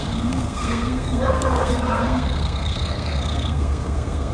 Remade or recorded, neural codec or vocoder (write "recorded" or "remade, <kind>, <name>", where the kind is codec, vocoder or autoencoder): remade, codec, SNAC